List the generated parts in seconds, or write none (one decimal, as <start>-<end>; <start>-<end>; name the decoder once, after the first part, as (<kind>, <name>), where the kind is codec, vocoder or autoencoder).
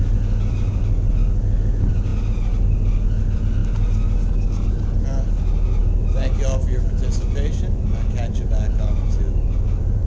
none